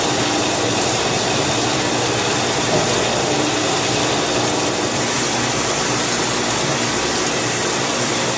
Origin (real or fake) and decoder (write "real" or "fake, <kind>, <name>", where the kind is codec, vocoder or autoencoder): real